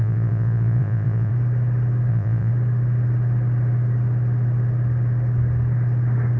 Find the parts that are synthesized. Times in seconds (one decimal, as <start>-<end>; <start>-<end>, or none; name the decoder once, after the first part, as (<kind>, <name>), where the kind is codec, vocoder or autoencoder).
0.0-1.3 (vocoder, Vocos); 2.1-2.5